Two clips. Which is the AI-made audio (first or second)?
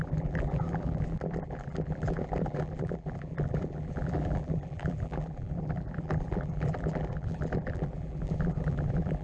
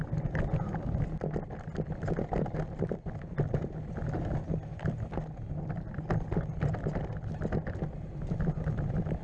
first